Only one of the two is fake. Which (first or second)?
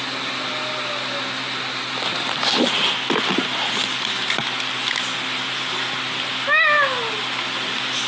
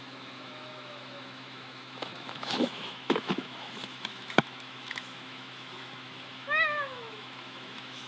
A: second